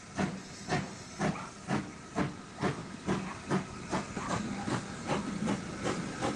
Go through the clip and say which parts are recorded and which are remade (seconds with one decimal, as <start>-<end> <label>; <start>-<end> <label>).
0.0-6.4 recorded